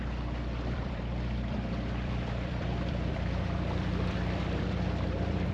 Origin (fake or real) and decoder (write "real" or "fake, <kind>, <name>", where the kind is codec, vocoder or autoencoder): fake, vocoder, BigVGAN v2